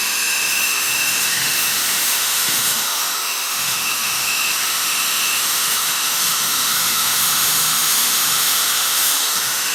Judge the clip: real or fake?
fake